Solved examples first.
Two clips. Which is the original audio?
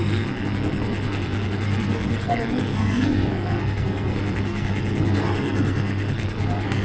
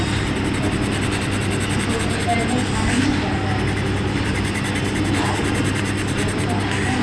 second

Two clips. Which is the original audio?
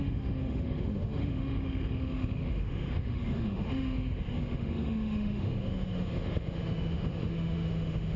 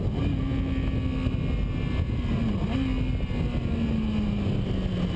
second